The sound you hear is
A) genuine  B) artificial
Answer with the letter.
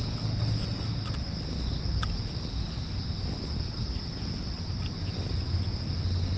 A